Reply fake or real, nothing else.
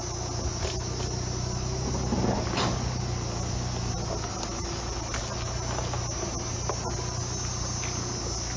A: real